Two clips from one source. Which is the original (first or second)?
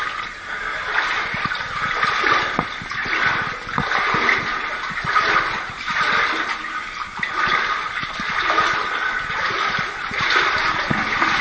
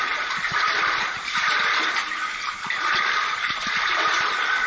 first